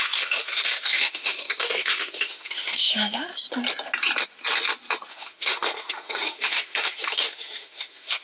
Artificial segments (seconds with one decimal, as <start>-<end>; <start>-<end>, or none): 0.0-3.3; 5.1-8.2